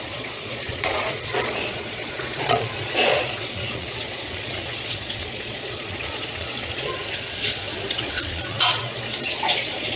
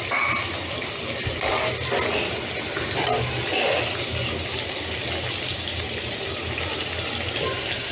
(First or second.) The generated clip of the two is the first